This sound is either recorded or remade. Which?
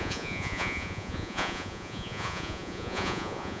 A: remade